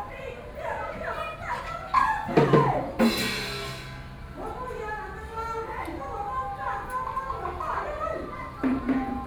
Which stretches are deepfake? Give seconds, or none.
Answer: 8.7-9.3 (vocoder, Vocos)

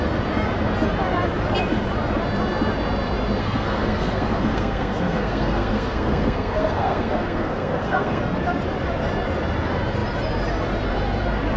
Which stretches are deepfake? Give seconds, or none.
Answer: 3.4-8.2 (codec, SNAC)